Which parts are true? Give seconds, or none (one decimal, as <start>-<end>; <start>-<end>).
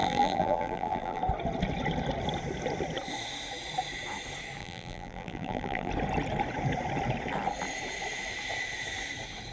1.2-4.6; 5.9-9.5